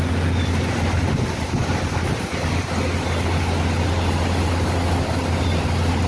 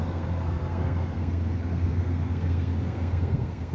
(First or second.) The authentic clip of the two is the first